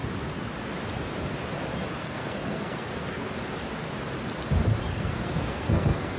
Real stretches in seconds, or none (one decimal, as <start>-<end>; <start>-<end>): 0.0-2.0; 3.3-4.9